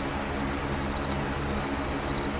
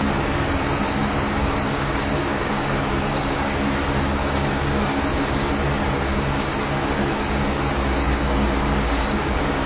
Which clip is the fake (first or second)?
second